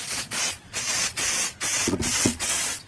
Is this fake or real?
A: fake